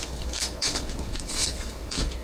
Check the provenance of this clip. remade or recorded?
remade